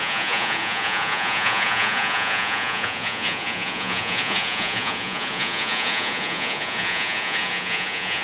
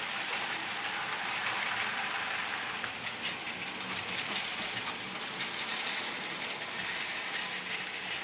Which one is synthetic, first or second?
first